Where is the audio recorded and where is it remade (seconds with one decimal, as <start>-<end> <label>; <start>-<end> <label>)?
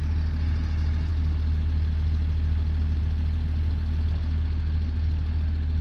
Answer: 0.0-5.8 recorded